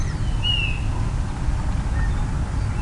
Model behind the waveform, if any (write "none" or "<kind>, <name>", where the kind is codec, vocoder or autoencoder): none